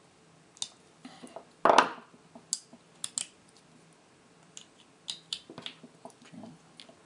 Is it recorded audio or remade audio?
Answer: recorded